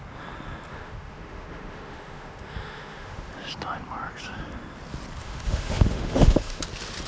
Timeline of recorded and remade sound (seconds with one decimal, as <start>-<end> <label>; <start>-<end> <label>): 0.0-0.7 recorded; 0.7-3.3 remade; 3.3-5.2 recorded; 5.2-6.6 remade; 6.6-7.1 recorded